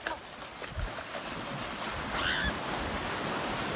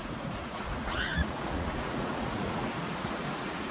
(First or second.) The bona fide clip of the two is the first